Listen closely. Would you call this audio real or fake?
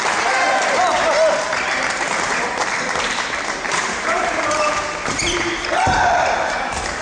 fake